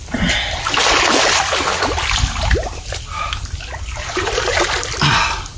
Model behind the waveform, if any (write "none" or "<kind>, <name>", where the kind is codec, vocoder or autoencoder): none